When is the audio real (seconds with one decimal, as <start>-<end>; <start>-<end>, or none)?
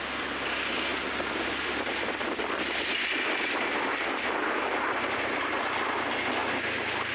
0.0-7.1